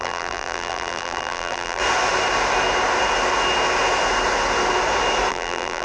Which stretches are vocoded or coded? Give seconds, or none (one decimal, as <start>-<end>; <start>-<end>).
0.0-1.8; 5.3-5.8